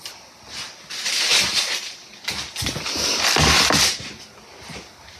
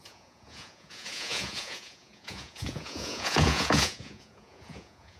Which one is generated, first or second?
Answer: second